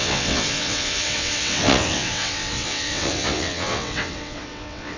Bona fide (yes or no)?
no